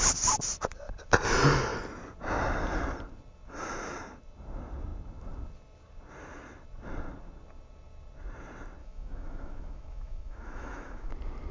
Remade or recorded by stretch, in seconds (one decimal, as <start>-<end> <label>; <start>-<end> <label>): 0.0-8.8 recorded; 8.8-11.1 remade; 11.1-11.5 recorded